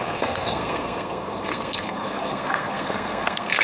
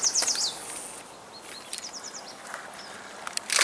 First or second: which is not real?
first